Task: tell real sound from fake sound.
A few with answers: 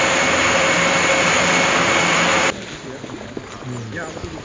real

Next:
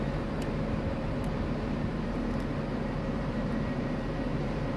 fake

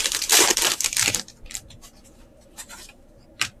fake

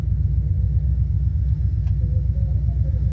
real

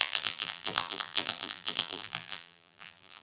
fake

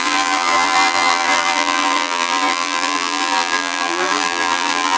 fake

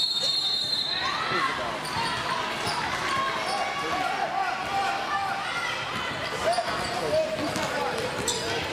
real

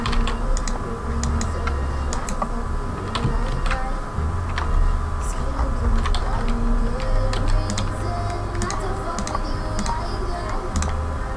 real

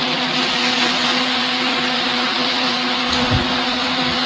fake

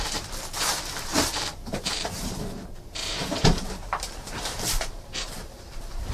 fake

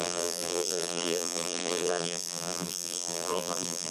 fake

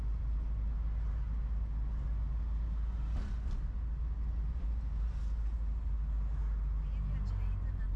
real